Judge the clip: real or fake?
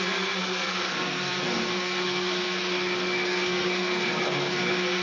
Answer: fake